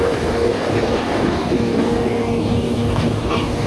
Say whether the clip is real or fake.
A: fake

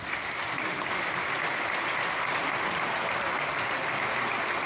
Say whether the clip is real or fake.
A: real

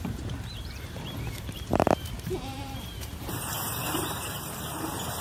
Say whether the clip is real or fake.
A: fake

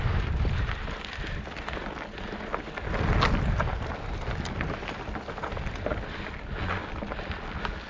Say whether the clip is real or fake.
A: real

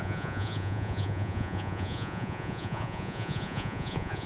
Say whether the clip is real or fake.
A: fake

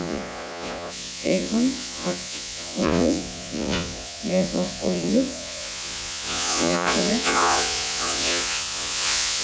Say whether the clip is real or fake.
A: fake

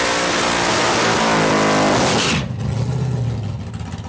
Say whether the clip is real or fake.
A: real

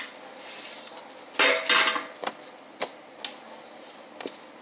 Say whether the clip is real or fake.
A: real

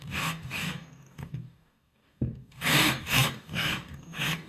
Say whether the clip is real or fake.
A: fake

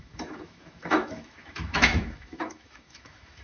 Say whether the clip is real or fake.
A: fake